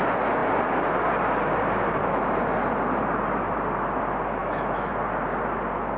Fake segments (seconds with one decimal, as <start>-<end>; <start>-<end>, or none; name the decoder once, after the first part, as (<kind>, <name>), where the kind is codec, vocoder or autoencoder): 4.4-4.9 (autoencoder, DAC-VAE)